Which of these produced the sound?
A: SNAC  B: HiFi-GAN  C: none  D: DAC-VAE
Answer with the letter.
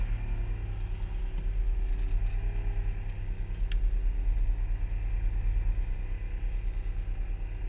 C